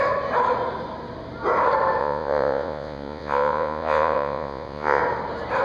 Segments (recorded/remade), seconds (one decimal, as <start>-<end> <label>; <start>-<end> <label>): 0.0-2.0 recorded; 2.0-5.0 remade; 5.0-5.6 recorded